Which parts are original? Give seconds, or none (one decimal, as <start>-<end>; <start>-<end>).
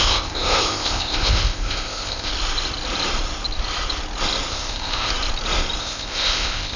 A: 2.3-4.5; 5.1-5.8